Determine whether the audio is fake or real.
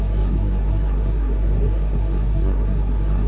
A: fake